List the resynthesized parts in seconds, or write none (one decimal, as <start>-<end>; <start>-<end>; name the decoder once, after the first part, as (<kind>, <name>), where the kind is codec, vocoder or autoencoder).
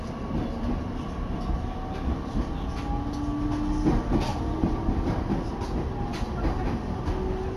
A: 4.3-7.0 (vocoder, BigVGAN v2)